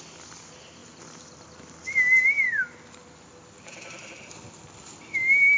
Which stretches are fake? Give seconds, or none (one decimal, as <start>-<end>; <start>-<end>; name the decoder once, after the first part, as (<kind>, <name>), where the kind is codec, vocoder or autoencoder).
none